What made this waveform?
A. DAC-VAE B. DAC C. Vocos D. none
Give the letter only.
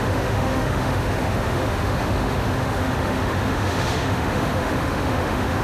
A